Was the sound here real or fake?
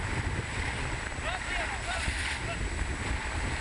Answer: real